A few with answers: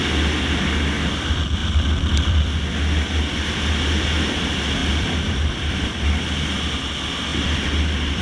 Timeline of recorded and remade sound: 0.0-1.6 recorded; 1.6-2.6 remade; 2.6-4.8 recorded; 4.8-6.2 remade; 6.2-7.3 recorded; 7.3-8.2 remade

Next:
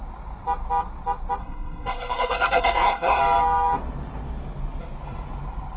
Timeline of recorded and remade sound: 0.0-1.4 recorded; 1.4-3.2 remade; 3.2-5.8 recorded